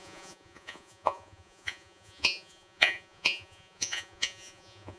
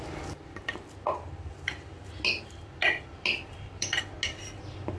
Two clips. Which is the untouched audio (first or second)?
second